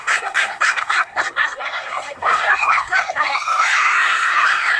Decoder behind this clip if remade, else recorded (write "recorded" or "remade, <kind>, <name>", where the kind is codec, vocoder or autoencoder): remade, codec, SNAC